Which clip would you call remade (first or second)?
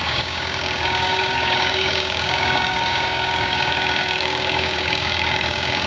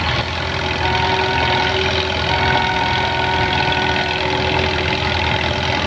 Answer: first